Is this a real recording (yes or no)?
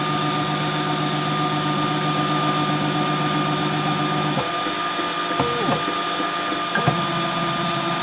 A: yes